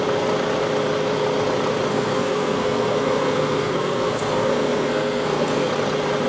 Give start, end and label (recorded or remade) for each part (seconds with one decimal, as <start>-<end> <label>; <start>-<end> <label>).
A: 0.0-1.9 recorded; 1.9-5.7 remade; 5.7-6.3 recorded